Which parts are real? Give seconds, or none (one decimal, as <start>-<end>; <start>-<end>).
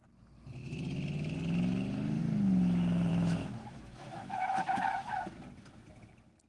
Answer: 0.0-3.1; 5.2-6.5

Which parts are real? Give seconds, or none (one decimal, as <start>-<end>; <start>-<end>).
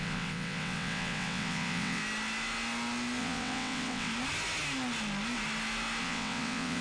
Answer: 2.0-3.2; 4.1-6.0